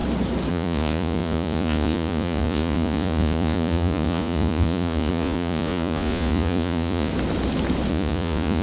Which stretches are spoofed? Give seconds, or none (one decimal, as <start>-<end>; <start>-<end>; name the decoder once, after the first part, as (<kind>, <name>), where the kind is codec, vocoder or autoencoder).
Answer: 0.5-7.1 (vocoder, Vocos); 7.9-8.6